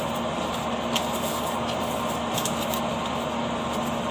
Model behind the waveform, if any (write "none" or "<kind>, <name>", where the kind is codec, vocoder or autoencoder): none